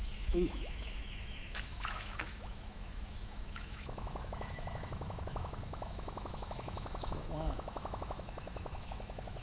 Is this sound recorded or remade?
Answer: remade